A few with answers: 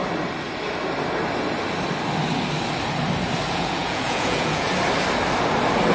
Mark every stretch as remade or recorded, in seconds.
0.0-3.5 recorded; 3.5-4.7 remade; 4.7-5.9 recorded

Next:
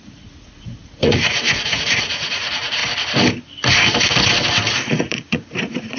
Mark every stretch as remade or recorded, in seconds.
0.0-2.8 remade; 2.8-4.9 recorded; 4.9-6.0 remade